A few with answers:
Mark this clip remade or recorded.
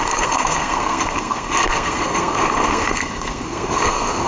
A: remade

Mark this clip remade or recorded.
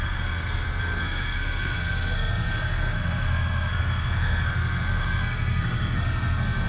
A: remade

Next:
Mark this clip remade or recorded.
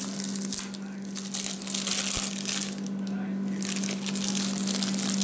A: recorded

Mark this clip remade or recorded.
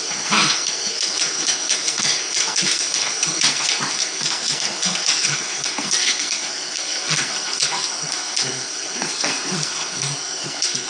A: remade